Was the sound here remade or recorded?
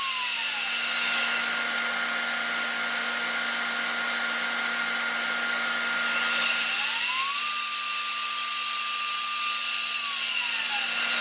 recorded